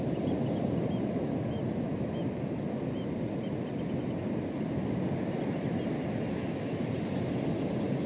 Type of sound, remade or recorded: recorded